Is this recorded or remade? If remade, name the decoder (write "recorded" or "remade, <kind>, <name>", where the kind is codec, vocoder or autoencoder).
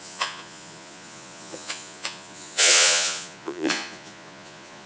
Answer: remade, vocoder, Vocos